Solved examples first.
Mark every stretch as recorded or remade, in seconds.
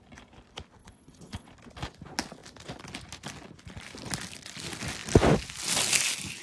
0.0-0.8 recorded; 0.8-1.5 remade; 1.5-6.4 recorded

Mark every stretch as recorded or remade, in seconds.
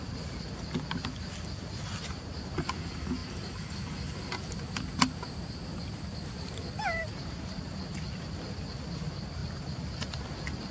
0.0-10.7 recorded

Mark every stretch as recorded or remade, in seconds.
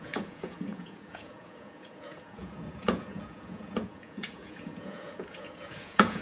0.0-6.2 remade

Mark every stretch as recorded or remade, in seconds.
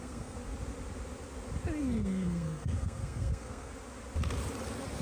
0.0-0.4 remade; 0.4-1.8 recorded; 1.8-3.7 remade; 3.7-5.0 recorded